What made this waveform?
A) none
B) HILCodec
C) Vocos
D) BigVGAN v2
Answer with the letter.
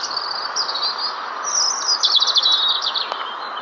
A